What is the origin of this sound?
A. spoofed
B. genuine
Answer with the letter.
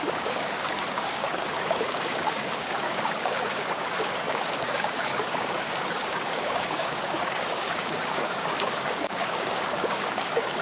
A